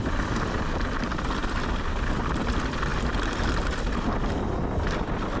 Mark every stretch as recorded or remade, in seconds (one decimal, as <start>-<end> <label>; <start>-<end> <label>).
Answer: 0.0-1.4 remade; 1.4-2.1 recorded; 2.1-2.9 remade; 2.9-3.8 recorded; 3.8-5.4 remade